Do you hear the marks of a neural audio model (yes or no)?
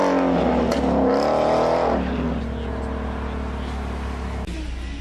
no